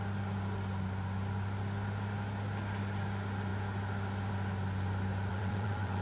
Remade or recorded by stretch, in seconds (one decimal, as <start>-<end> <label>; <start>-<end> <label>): 0.0-5.3 recorded; 5.3-6.0 remade